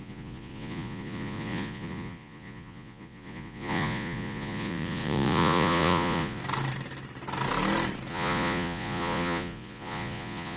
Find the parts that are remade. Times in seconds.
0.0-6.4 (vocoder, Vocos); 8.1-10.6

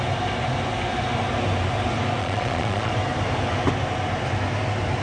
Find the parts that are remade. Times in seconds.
2.2-2.9 (vocoder, Vocos)

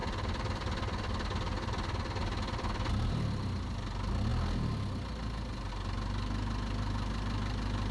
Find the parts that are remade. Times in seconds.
none

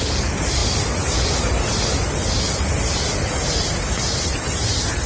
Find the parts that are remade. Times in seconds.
none

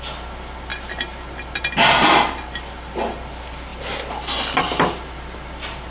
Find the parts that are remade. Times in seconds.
none

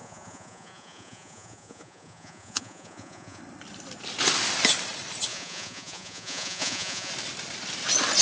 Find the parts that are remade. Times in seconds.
0.0-3.4 (vocoder, Vocos); 5.3-7.1